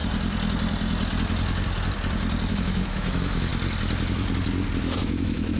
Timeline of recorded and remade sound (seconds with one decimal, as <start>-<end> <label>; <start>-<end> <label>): 0.0-2.5 recorded; 2.5-3.5 remade; 3.5-5.0 recorded; 5.0-5.6 remade